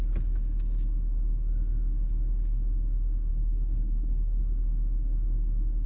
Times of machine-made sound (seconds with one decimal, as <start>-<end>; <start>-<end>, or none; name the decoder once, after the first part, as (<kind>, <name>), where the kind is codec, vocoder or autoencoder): 3.3-4.4 (codec, HILCodec)